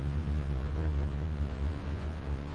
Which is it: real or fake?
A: fake